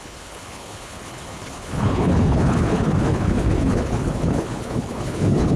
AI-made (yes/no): yes